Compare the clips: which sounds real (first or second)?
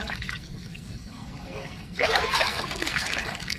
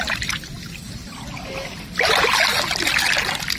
second